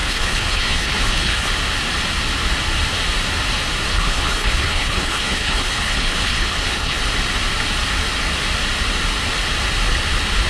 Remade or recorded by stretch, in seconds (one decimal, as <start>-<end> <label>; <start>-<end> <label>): 0.0-1.5 remade; 1.5-3.9 recorded; 3.9-7.0 remade; 7.0-10.5 recorded